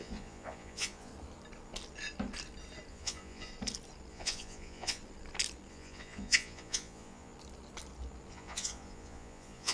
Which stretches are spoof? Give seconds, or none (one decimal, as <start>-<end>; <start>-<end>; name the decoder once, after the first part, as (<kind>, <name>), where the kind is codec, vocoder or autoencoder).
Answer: 0.0-1.1 (vocoder, Vocos); 2.9-3.5; 4.1-5.0; 5.7-7.3; 8.3-9.7